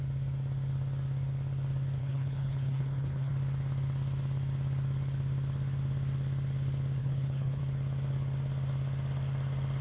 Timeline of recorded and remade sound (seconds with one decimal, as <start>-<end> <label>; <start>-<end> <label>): 0.0-2.0 recorded; 2.0-3.3 remade; 3.3-7.0 recorded; 7.0-7.6 remade; 7.6-9.8 recorded